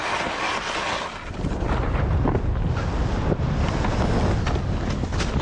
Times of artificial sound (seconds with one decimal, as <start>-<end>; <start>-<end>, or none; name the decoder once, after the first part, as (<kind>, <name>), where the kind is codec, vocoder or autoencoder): none